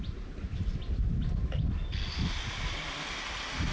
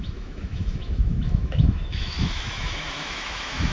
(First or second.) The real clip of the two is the first